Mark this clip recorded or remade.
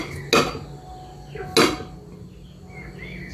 recorded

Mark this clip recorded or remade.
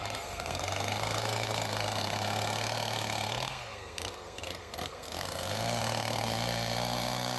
remade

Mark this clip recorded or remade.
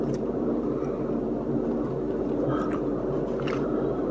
remade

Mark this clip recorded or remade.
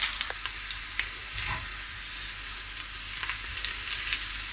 recorded